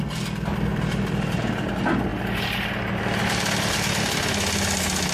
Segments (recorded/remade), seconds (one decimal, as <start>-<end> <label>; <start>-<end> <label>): 0.0-0.7 recorded; 0.7-1.7 remade; 1.7-5.1 recorded